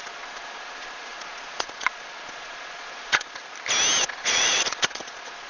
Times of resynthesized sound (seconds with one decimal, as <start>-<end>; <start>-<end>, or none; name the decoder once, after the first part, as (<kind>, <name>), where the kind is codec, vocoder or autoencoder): 0.0-3.4 (vocoder, Vocos); 4.0-5.5

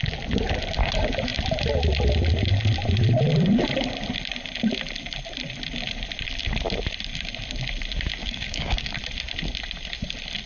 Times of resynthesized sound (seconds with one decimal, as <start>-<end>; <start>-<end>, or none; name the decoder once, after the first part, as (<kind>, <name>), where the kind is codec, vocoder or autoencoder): 8.2-8.9 (codec, DAC)

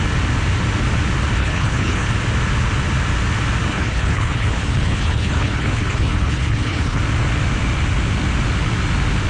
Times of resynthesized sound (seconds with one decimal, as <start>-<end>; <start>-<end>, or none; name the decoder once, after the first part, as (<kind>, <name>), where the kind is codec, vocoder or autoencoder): 1.4-2.1 (codec, HILCodec); 3.7-7.0

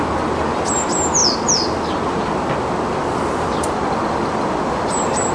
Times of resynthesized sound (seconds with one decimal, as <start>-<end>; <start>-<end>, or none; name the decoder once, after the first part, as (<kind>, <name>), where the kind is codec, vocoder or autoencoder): 1.2-1.8 (vocoder, BigVGAN v2); 3.0-5.3

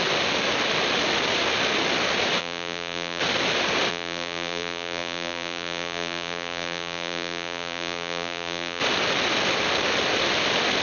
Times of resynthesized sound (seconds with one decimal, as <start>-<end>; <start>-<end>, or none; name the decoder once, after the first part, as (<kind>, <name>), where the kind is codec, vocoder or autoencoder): 2.4-3.2 (vocoder, BigVGAN v2); 3.9-8.8

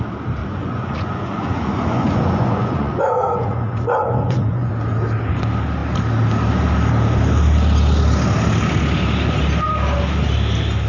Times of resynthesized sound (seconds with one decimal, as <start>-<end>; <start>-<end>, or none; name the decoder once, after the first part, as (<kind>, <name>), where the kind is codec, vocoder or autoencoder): 0.4-4.7 (vocoder, Vocos)

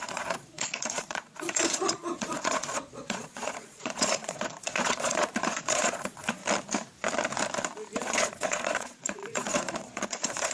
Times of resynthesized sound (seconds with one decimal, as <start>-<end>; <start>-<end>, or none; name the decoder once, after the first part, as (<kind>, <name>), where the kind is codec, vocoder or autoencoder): 0.0-6.4 (vocoder, Vocos); 8.0-10.5

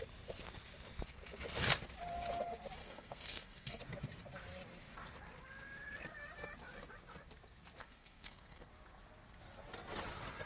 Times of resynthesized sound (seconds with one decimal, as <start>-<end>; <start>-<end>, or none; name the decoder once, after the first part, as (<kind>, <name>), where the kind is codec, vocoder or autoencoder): 2.8-3.8 (codec, SNAC); 7.8-8.7